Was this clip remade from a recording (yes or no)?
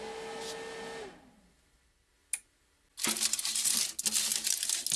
no